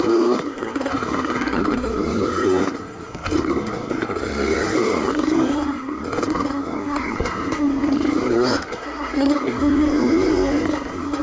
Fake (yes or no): yes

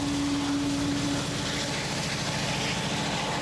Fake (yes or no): no